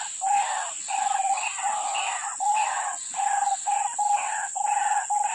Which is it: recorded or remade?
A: recorded